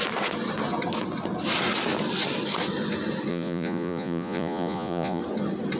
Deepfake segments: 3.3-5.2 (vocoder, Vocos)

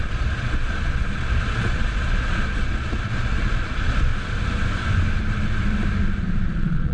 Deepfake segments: 0.0-4.1 (vocoder, Vocos); 6.5-6.9